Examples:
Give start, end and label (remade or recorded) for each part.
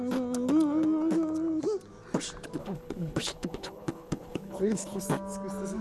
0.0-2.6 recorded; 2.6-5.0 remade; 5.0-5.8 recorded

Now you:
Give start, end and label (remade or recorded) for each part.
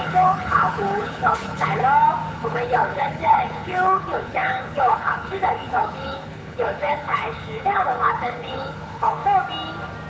0.0-1.8 remade; 1.8-2.3 recorded; 2.3-9.2 remade; 9.2-10.1 recorded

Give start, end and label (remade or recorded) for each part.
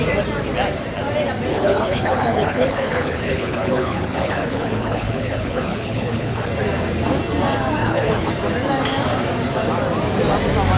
0.0-1.5 recorded; 1.5-6.5 remade; 6.5-7.8 recorded; 7.8-8.3 remade; 8.3-10.8 recorded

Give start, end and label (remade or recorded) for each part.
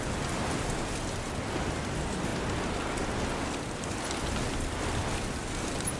0.0-6.0 recorded